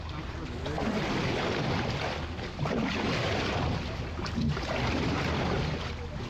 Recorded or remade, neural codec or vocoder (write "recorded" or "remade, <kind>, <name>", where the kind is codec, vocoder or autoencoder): recorded